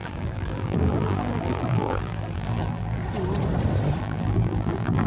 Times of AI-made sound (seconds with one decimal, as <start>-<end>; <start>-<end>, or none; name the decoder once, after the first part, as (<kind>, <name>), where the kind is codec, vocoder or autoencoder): 0.0-3.0 (vocoder, BigVGAN v2); 4.0-5.1